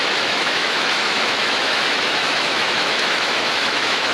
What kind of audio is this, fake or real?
fake